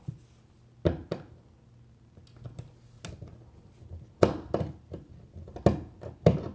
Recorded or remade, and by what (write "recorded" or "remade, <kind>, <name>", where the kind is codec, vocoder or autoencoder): recorded